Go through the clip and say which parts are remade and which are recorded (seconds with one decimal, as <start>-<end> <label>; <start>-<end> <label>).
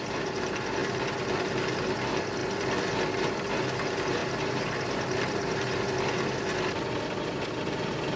0.0-4.2 recorded; 4.2-5.8 remade; 5.8-8.2 recorded